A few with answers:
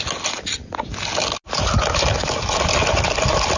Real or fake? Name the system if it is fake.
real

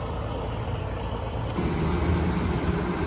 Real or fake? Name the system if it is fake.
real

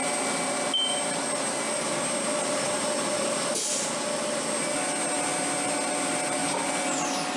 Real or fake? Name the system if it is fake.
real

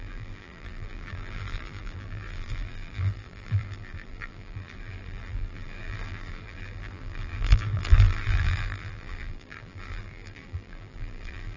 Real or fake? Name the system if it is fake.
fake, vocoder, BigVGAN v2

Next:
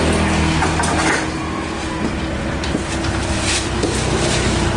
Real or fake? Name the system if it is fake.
real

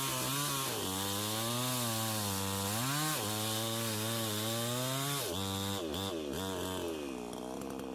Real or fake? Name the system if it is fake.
real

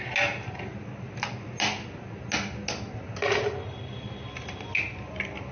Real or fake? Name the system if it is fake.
real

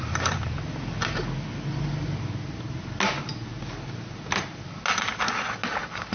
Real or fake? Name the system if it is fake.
real